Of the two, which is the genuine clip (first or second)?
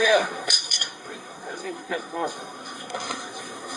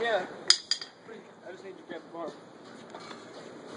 second